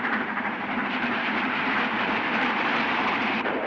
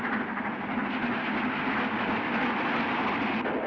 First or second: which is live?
second